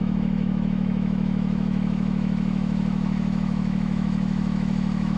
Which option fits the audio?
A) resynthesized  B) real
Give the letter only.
A